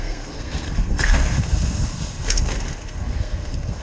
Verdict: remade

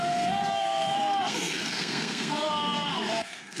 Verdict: remade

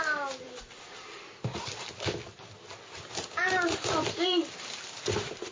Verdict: recorded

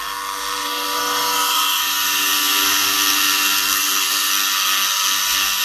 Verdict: remade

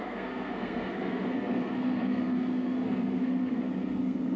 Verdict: remade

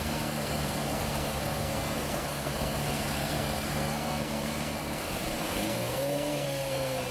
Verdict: remade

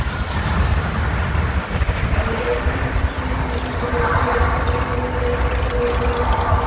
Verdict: recorded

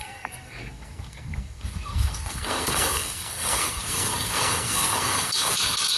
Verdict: remade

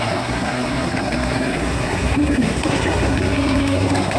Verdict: remade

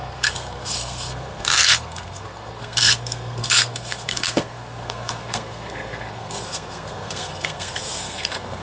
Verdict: remade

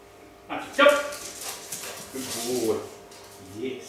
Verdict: recorded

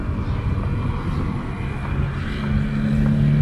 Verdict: recorded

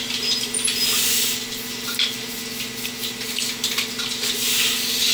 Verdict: recorded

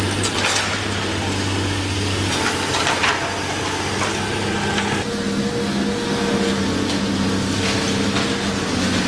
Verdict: recorded